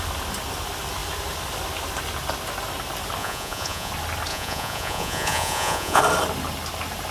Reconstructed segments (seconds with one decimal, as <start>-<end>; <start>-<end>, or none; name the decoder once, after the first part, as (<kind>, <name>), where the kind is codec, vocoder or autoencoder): 3.2-3.9 (vocoder, Vocos); 4.3-6.0